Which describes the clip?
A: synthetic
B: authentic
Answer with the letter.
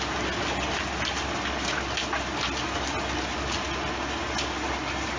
B